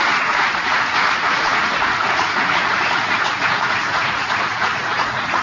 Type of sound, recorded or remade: remade